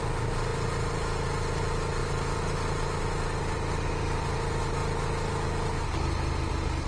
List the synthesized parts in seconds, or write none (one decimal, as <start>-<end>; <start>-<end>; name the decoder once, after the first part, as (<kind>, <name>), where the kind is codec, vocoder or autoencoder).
none